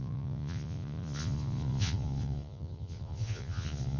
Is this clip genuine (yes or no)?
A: no